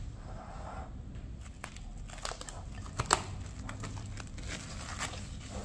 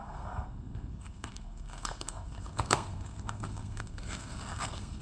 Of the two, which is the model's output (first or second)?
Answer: second